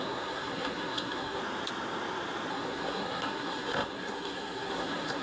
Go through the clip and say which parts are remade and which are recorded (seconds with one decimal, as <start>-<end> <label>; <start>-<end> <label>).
0.0-1.4 remade; 1.4-2.5 recorded; 2.5-5.2 remade